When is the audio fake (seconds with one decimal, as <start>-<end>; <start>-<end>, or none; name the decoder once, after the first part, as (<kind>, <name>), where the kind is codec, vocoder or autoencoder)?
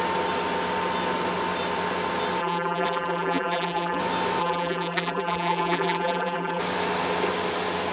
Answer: 2.4-4.0 (vocoder, BigVGAN v2); 4.4-6.6